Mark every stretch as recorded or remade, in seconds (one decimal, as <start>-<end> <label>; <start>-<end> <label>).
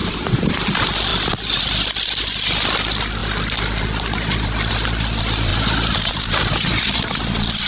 0.0-0.5 remade; 0.5-5.5 recorded; 5.5-6.8 remade; 6.8-7.7 recorded